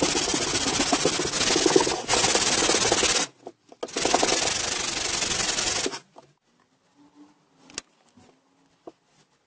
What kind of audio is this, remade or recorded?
recorded